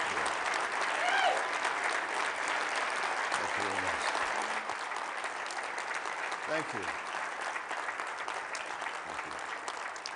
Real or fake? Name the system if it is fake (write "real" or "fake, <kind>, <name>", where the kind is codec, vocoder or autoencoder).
real